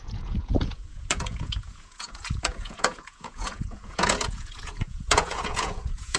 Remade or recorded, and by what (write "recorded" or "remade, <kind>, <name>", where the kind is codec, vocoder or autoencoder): remade, vocoder, Vocos